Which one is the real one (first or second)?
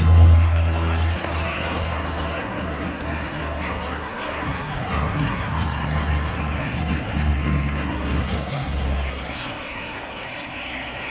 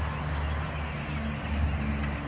second